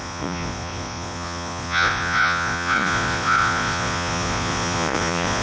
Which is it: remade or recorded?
remade